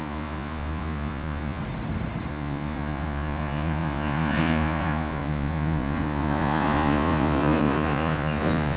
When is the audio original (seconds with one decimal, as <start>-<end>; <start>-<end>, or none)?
1.6-2.3